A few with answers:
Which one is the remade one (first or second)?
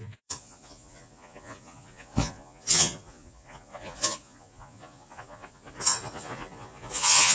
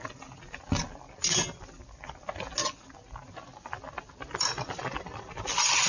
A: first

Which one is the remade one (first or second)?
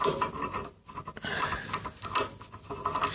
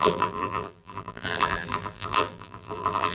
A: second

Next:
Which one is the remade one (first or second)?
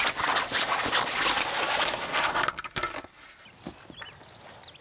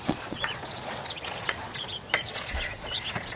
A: second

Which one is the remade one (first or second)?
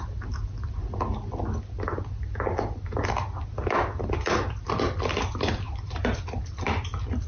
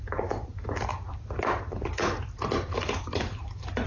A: second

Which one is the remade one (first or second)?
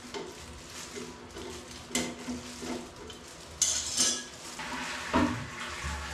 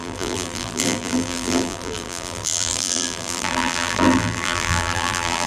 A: second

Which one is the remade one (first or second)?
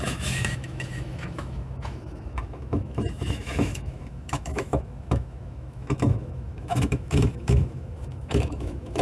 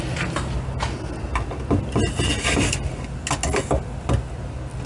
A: first